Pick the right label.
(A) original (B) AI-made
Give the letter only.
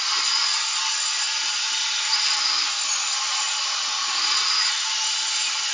A